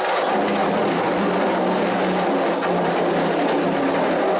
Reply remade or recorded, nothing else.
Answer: recorded